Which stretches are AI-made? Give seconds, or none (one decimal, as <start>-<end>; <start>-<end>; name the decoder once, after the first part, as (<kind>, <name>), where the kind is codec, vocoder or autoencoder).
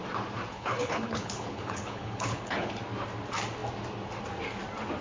0.5-2.8 (codec, HILCodec)